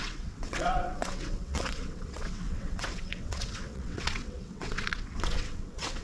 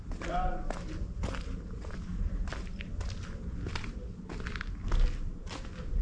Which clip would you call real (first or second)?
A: second